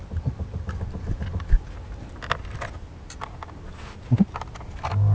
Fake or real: real